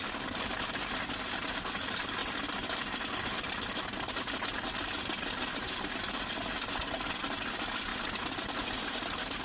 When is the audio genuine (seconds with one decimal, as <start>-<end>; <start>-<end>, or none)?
0.0-9.4